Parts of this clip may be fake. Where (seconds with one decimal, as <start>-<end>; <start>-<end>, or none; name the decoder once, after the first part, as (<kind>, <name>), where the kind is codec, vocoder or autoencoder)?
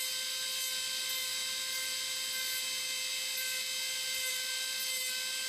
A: none